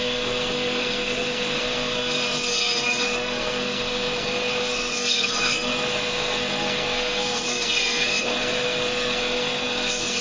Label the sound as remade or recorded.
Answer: remade